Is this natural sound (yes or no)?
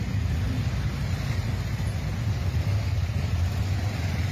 yes